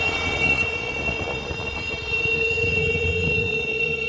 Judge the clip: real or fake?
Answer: fake